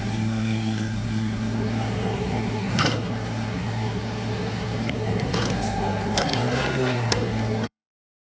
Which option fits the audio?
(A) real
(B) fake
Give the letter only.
B